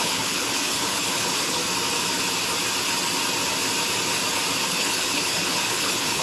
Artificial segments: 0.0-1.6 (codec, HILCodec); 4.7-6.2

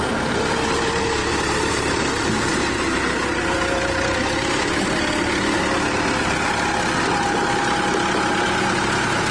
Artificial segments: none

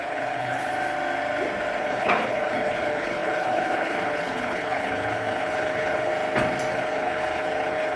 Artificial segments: 0.0-0.7 (codec, HILCodec); 1.8-6.1; 6.7-8.0

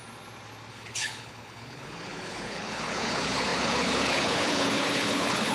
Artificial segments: 0.7-5.5 (codec, HILCodec)